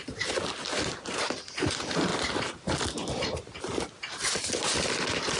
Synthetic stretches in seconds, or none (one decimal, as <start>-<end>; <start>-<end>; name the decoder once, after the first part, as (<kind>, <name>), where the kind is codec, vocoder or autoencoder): none